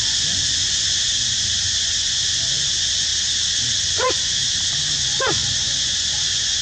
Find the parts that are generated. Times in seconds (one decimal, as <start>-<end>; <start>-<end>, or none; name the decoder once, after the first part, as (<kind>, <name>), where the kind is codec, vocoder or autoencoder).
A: 0.0-3.1 (vocoder, Vocos); 3.8-4.4; 5.0-6.6